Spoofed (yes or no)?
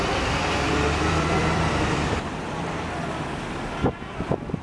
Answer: yes